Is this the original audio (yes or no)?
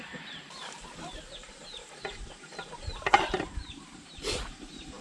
no